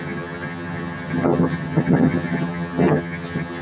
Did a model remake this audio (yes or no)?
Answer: yes